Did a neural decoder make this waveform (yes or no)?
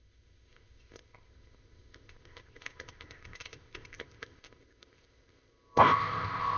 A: yes